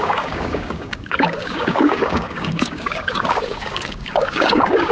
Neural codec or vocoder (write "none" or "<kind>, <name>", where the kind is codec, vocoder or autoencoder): codec, DAC